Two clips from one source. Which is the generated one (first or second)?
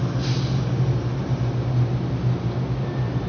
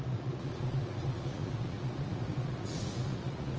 second